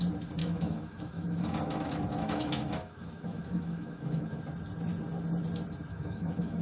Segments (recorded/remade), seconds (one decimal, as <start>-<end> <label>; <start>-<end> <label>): 0.0-0.4 recorded; 0.4-4.4 remade; 4.4-5.9 recorded; 5.9-6.6 remade